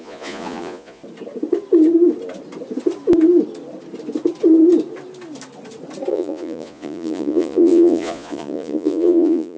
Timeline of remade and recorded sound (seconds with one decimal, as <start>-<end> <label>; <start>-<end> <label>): 0.0-1.0 remade; 1.0-6.1 recorded; 6.1-9.6 remade